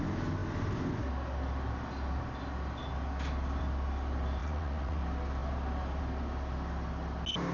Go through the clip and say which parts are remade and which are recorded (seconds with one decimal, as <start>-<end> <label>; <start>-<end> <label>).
0.0-4.4 recorded; 4.4-5.0 remade; 5.0-7.5 recorded